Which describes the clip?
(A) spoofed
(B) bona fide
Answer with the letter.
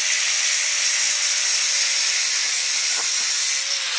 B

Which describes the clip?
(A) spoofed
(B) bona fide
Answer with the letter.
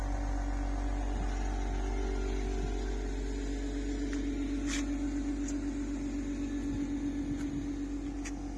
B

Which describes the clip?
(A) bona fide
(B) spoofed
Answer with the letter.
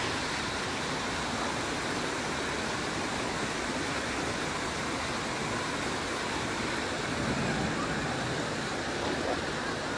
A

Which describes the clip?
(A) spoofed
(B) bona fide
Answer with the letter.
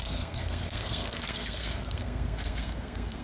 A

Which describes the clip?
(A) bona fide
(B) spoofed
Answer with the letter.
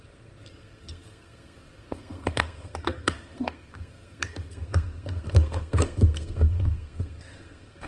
B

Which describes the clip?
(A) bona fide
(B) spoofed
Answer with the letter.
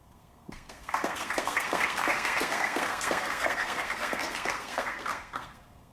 B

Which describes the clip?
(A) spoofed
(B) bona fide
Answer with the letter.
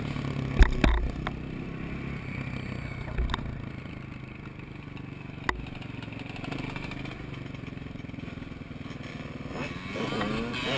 B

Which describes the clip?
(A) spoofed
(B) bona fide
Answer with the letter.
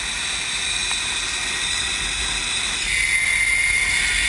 B